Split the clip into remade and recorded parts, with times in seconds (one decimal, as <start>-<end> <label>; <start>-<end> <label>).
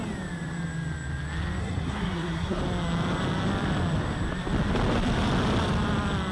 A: 0.0-1.6 recorded; 1.6-2.6 remade; 2.6-6.3 recorded